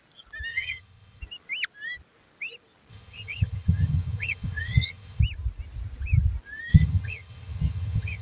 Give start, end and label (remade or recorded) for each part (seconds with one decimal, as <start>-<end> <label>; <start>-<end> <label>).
0.0-0.5 recorded; 0.5-1.2 remade; 1.2-2.9 recorded; 2.9-5.2 remade; 5.2-6.7 recorded; 6.7-8.2 remade